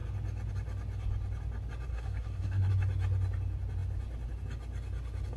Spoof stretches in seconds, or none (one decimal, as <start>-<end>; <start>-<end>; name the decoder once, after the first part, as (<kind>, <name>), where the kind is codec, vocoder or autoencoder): 1.9-2.7 (codec, SNAC)